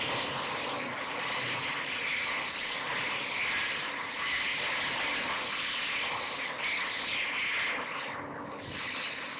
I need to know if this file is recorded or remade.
recorded